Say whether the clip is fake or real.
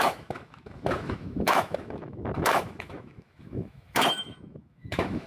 fake